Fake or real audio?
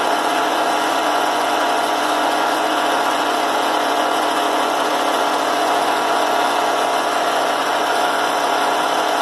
fake